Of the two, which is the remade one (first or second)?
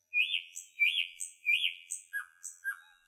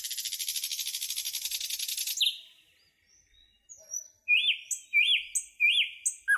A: first